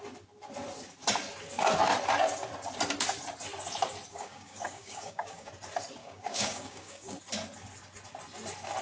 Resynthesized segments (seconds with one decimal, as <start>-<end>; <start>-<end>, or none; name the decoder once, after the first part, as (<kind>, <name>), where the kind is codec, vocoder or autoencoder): 4.1-5.5 (codec, DAC); 6.0-7.2